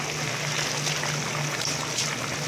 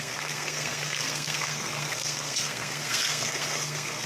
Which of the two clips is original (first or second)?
first